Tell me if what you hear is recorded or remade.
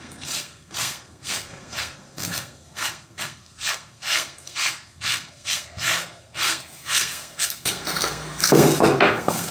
remade